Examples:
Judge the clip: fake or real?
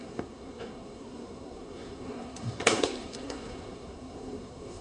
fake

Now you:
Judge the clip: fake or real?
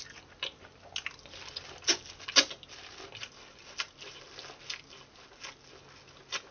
real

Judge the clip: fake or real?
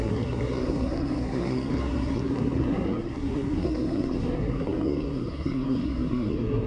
fake